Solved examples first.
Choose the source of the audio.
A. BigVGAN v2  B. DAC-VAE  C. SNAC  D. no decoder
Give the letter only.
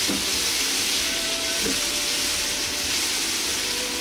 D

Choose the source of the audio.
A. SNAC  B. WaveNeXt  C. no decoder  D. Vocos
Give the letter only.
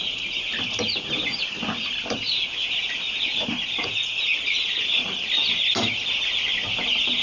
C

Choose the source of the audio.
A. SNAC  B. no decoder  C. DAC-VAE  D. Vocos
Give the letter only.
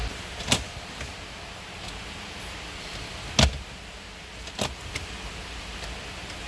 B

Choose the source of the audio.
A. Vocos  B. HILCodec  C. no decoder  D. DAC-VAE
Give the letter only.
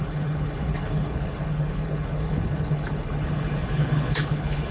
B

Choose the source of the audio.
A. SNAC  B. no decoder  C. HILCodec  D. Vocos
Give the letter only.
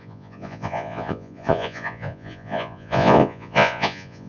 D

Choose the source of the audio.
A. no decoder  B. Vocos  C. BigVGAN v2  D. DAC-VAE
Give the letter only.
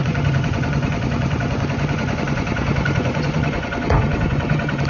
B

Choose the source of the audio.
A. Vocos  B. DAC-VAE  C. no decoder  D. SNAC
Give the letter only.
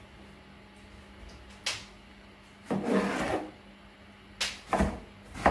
C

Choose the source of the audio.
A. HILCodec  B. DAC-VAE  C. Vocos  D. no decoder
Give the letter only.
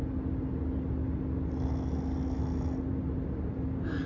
D